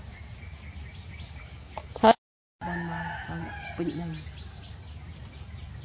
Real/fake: real